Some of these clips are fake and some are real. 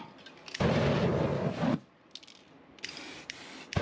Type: real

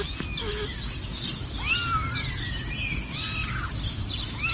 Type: real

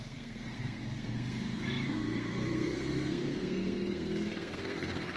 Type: fake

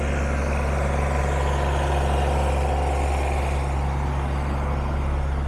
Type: real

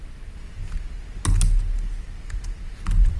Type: real